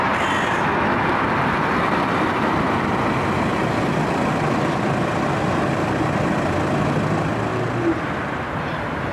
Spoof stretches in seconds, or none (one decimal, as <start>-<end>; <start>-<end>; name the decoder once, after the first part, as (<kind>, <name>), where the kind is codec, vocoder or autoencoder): 7.5-8.6 (vocoder, BigVGAN v2)